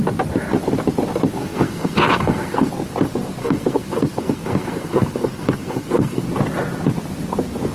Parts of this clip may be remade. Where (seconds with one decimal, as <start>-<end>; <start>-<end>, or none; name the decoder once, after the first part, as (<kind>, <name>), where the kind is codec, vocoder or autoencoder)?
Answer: 1.4-2.7 (codec, SNAC); 3.4-6.2